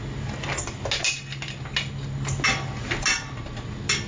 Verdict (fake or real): real